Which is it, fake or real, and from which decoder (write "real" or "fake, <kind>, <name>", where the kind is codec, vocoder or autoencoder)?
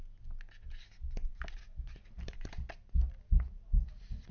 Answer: real